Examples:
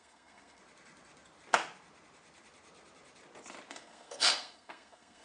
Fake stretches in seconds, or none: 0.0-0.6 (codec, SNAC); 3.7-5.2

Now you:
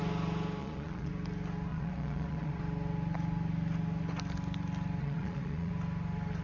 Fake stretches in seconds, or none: 0.6-1.1 (vocoder, Vocos); 1.7-2.6; 5.0-5.7

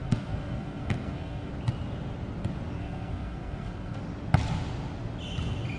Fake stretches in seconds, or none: 0.0-1.5 (codec, SNAC); 2.8-4.0

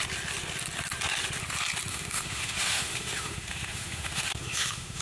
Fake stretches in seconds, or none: 1.9-5.0 (autoencoder, DAC-VAE)

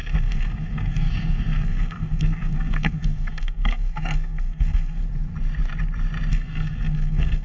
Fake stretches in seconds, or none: 0.0-5.0 (codec, SNAC); 6.3-7.4

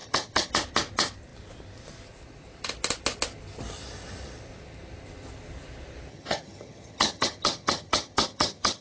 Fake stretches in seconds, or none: 0.0-0.5 (vocoder, HiFi-GAN); 6.1-8.8